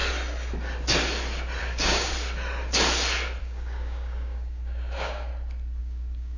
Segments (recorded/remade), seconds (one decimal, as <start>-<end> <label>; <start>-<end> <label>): 0.0-1.6 recorded; 1.6-2.1 remade; 2.1-3.4 recorded; 3.4-5.3 remade; 5.3-5.8 recorded; 5.8-6.4 remade